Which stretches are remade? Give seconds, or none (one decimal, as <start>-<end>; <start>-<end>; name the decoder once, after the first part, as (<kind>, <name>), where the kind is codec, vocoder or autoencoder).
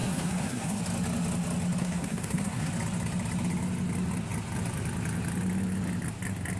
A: 0.0-0.8 (codec, SNAC); 1.8-2.7